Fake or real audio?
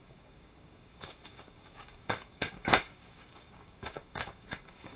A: fake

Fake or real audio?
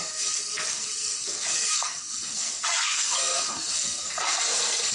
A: fake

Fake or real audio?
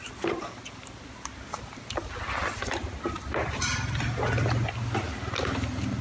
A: real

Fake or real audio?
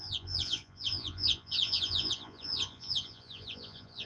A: fake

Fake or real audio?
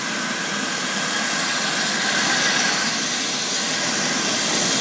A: real